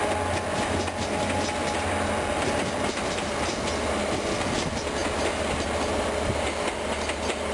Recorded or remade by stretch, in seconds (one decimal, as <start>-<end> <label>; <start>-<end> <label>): 0.0-7.5 recorded